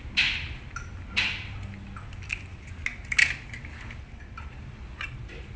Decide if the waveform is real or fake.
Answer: real